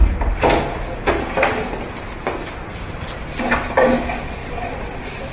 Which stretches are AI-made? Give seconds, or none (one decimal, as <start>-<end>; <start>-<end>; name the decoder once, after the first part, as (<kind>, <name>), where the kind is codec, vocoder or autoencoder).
3.2-5.3 (vocoder, BigVGAN v2)